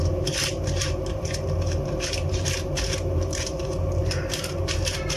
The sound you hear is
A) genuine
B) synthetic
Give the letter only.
B